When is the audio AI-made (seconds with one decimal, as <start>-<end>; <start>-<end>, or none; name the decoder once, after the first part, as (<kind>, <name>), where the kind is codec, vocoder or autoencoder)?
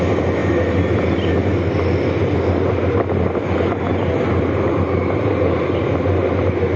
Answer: none